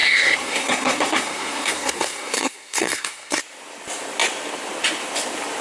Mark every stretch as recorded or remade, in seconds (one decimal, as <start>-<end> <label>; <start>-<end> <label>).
0.0-3.4 remade; 3.4-5.6 recorded